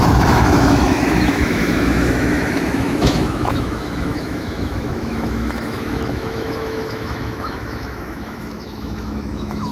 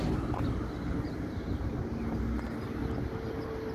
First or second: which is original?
second